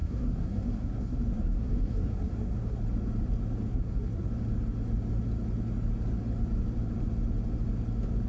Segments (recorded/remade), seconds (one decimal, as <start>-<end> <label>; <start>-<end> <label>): 0.0-2.8 remade; 2.8-3.7 recorded; 3.7-4.3 remade; 4.3-8.3 recorded